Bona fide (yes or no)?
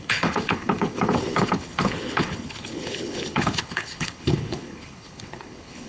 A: no